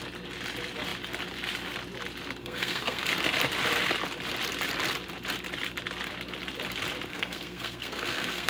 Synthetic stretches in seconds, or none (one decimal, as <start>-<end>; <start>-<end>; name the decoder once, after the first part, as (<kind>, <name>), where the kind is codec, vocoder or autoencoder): 2.4-3.1 (codec, SNAC); 7.1-8.5